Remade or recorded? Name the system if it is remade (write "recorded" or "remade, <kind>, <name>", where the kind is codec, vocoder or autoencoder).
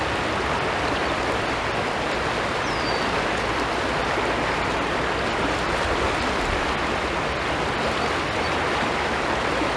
recorded